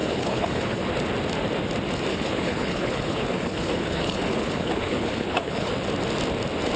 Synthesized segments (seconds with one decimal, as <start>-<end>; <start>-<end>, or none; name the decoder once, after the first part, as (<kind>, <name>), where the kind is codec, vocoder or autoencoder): 0.0-0.8 (codec, HILCodec); 2.1-5.7